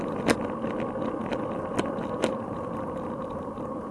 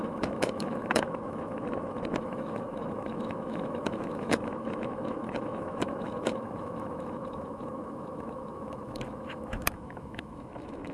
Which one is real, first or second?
first